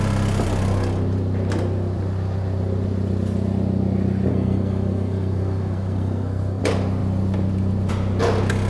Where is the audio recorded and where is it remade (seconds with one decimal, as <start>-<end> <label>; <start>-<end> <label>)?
0.0-4.3 recorded; 4.3-6.6 remade; 6.6-8.7 recorded